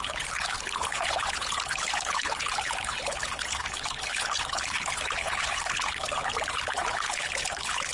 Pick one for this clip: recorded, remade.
remade